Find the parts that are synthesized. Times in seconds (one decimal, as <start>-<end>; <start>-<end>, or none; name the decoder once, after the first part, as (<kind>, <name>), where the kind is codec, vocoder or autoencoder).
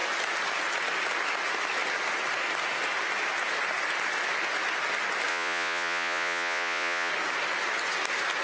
5.3-7.1 (vocoder, Vocos)